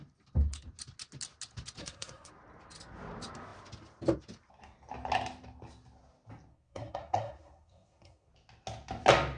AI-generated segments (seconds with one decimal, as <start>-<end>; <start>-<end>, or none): 1.8-2.3; 6.5-8.3